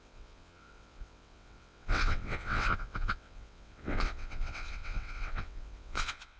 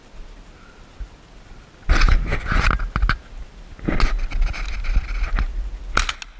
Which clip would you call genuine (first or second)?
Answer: second